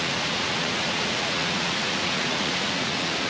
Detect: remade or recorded remade